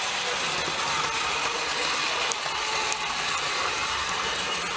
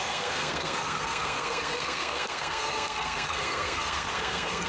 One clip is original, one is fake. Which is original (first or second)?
first